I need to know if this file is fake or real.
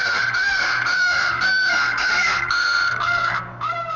fake